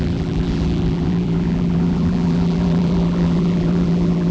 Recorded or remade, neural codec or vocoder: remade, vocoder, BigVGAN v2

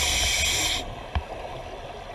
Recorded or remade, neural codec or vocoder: recorded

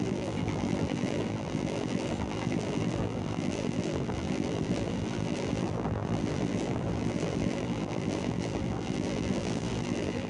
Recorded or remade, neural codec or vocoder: remade, vocoder, BigVGAN v2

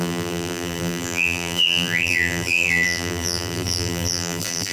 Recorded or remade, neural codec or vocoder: remade, vocoder, BigVGAN v2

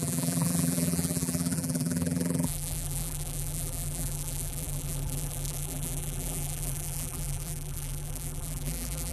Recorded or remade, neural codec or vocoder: remade, vocoder, BigVGAN v2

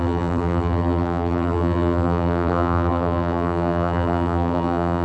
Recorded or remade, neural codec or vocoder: remade, vocoder, BigVGAN v2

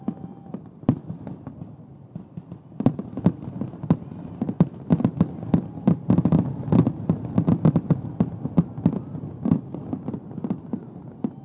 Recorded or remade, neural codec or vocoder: remade, vocoder, BigVGAN v2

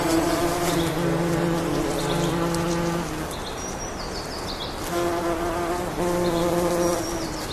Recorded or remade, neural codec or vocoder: recorded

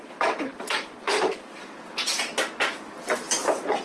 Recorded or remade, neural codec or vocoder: remade, vocoder, BigVGAN v2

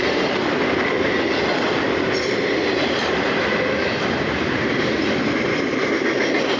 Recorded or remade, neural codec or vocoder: remade, vocoder, BigVGAN v2